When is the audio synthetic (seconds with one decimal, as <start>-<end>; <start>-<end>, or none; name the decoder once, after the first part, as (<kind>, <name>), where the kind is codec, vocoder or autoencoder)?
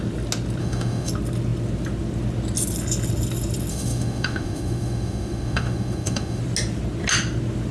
0.6-1.1 (autoencoder, DAC-VAE); 3.7-6.4